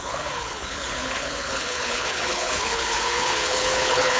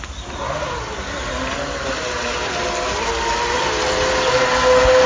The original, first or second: second